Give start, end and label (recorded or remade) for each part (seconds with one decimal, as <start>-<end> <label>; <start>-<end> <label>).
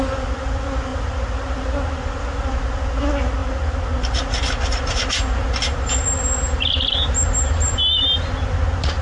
0.0-9.0 recorded